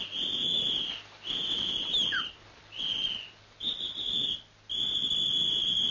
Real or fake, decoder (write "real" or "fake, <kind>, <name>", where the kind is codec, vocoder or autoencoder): real